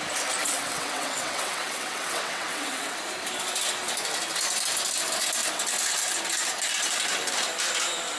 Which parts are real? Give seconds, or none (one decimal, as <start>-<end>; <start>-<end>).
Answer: 0.0-0.4; 3.0-8.2